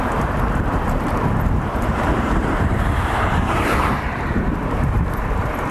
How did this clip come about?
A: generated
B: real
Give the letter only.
A